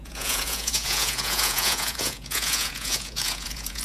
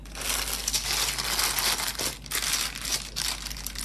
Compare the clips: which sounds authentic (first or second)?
second